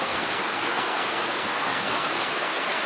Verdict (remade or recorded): remade